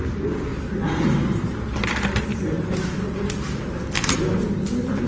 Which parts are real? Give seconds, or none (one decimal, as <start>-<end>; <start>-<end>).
0.0-2.3; 2.9-5.1